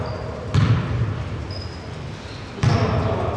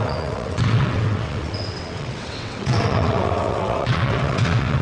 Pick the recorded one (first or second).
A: first